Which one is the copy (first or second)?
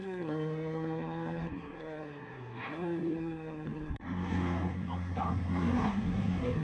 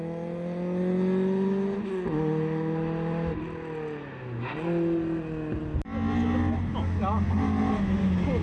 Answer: first